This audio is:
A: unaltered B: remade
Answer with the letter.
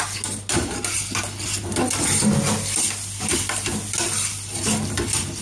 A